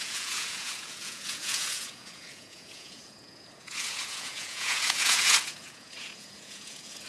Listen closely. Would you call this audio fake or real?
fake